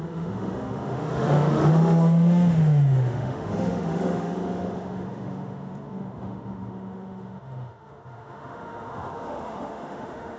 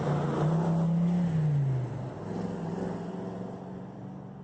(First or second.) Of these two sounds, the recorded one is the second